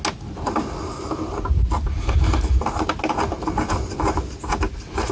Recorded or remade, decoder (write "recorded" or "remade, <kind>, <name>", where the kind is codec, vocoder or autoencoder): recorded